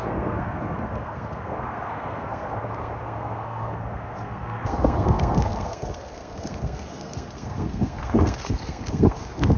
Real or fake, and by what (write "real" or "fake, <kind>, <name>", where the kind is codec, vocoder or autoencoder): fake, codec, SNAC